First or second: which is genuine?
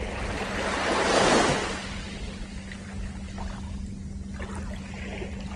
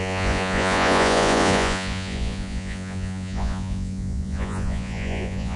first